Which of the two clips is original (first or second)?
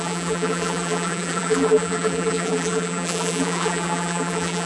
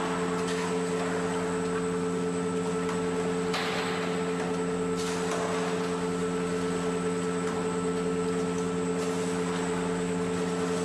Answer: second